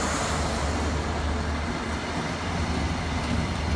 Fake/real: real